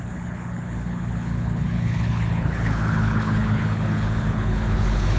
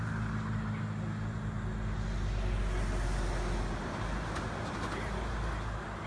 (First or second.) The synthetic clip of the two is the first